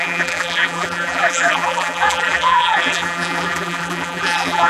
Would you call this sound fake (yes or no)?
yes